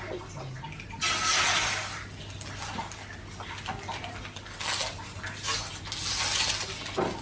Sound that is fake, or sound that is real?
real